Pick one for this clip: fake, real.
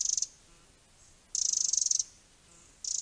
real